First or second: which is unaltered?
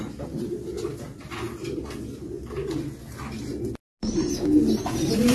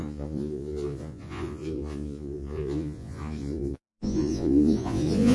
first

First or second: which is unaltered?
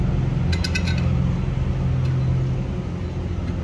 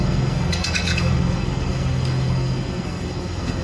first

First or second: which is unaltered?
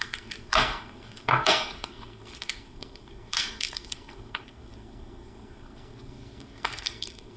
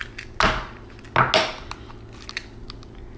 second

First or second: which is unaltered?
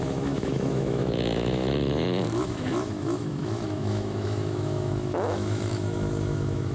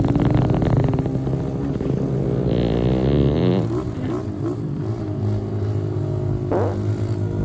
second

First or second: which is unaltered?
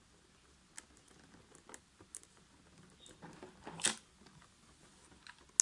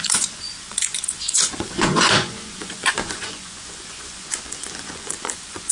first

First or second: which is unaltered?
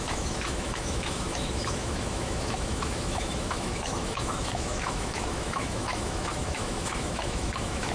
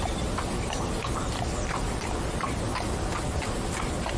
second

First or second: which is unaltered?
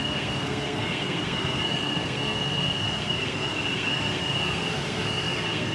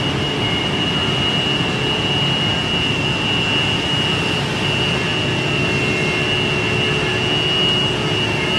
second